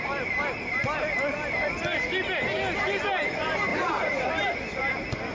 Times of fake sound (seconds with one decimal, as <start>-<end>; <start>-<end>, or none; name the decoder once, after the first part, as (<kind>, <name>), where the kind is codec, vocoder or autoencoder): 3.7-4.3 (vocoder, Vocos)